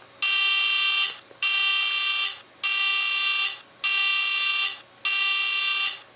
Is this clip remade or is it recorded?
recorded